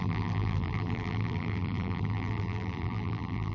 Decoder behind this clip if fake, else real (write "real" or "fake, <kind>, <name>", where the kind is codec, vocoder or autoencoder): fake, vocoder, BigVGAN v2